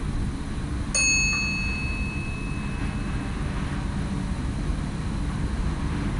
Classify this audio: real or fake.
real